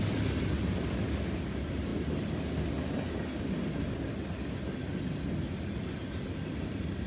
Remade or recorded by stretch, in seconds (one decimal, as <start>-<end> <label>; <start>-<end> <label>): 0.0-7.1 recorded